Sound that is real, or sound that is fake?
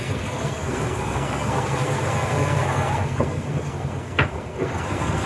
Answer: fake